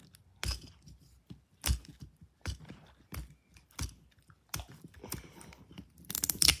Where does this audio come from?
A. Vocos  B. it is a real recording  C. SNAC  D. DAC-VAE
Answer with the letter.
B